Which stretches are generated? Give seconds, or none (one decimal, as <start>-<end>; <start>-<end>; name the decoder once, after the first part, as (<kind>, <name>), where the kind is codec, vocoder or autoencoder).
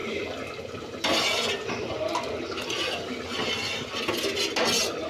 none